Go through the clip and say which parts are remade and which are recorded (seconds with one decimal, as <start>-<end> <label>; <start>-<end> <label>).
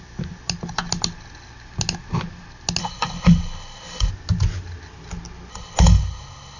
0.0-2.8 recorded; 2.8-4.1 remade; 4.1-5.5 recorded; 5.5-6.6 remade